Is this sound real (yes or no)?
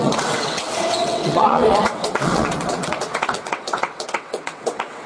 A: no